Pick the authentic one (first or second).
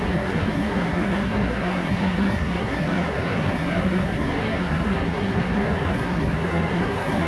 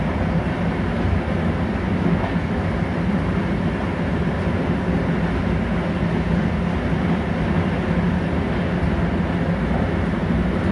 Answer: second